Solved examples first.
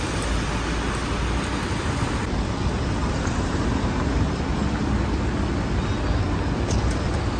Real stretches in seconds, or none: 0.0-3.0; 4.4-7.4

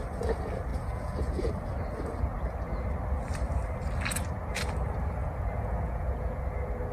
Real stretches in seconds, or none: 0.0-0.7; 1.5-5.2; 6.4-6.9

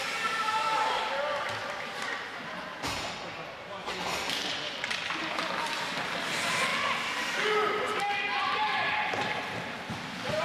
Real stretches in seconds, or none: 0.0-4.4; 4.9-10.4

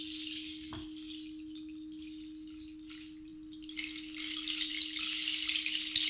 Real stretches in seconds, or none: 0.0-6.1